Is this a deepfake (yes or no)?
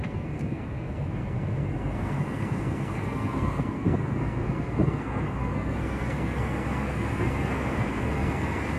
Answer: yes